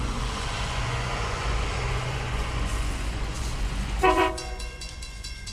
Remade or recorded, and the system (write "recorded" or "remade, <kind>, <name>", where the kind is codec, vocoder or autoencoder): remade, vocoder, Vocos